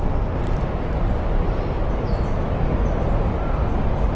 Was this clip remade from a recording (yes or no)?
no